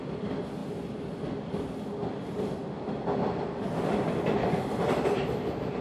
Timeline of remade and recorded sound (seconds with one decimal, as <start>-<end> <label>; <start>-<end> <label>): 0.0-5.8 recorded